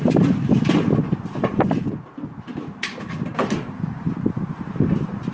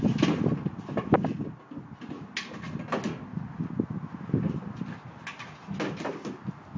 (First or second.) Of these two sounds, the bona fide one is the second